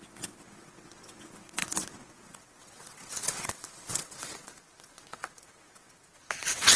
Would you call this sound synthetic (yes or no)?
yes